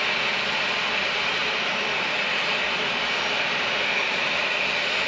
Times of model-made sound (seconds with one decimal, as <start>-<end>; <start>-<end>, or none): none